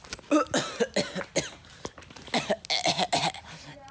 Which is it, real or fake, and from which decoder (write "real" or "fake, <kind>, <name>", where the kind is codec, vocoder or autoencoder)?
real